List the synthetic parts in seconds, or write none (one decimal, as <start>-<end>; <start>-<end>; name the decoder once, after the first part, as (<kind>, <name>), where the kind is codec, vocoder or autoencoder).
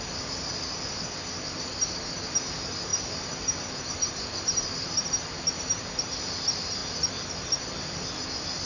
none